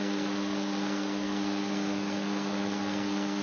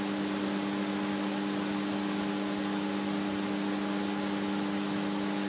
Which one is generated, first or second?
first